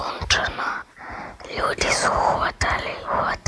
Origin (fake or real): fake